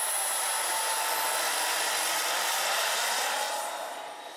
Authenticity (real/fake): real